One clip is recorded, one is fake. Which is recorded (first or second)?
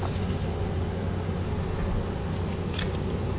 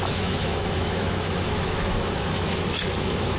first